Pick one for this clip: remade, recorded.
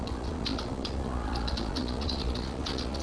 remade